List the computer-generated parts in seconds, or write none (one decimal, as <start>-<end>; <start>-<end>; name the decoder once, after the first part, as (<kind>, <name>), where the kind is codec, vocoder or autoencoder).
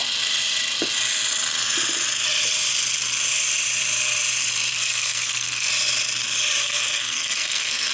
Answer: 4.7-5.7 (codec, SNAC); 6.6-7.9